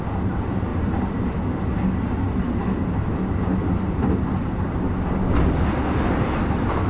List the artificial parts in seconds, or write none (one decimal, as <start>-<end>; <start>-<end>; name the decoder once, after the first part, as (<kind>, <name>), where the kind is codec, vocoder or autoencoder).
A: none

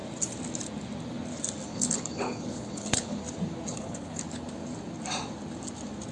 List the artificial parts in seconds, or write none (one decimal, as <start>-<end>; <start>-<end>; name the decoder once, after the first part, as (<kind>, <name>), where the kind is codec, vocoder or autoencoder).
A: 1.7-3.2 (codec, HILCodec); 3.7-4.2

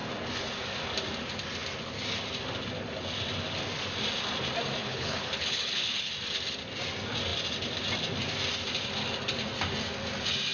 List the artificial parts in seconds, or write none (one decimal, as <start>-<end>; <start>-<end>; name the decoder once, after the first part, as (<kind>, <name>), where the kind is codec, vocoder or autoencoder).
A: 4.8-6.1 (codec, HILCodec)

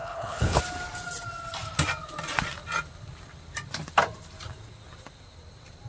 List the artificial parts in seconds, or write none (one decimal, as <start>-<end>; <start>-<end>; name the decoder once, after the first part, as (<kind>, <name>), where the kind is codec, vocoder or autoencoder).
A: 0.0-0.6 (codec, HILCodec)

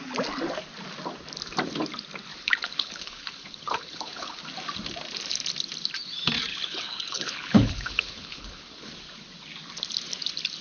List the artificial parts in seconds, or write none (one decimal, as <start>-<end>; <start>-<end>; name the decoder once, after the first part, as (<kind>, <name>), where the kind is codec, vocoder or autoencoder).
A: 2.3-4.4 (codec, HILCodec); 6.5-8.9

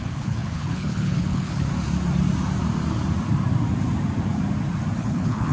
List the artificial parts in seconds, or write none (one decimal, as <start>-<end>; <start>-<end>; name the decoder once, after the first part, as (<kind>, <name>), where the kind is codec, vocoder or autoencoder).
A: 0.0-1.7 (codec, HILCodec); 5.0-5.5

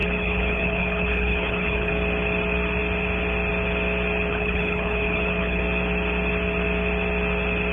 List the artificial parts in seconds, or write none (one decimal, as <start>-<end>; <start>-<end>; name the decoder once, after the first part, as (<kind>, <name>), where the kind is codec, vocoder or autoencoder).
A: 0.0-1.9 (codec, HILCodec); 4.3-5.6